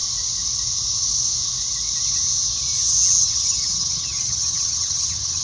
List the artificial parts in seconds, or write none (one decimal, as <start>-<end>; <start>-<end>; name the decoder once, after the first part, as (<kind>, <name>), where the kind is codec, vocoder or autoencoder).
3.2-5.4 (vocoder, HiFi-GAN)